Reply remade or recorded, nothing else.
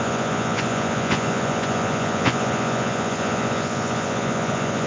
remade